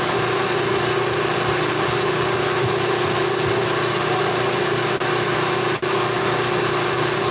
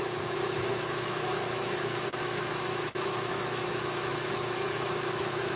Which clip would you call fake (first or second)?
second